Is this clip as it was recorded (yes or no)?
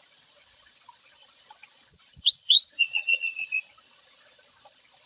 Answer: no